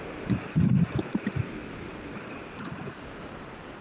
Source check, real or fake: real